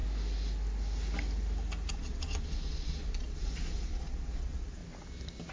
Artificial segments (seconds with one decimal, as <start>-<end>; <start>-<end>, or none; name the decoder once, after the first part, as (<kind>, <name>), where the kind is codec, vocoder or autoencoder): 1.9-4.8 (vocoder, Vocos)